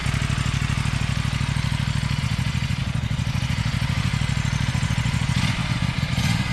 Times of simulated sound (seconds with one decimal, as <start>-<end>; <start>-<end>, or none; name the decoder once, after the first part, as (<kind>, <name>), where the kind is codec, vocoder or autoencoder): 2.2-4.1 (vocoder, Vocos); 4.7-6.5